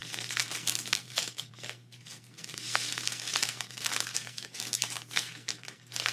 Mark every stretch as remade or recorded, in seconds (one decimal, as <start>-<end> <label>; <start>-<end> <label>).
0.0-6.1 remade